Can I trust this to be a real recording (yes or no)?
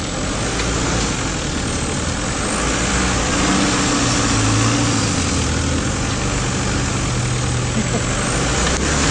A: yes